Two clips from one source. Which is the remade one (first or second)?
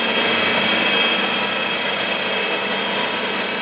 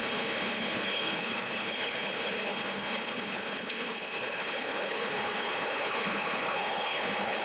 second